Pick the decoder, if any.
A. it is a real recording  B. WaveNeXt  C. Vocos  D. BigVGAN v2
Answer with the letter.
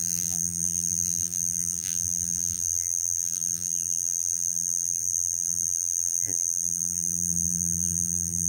D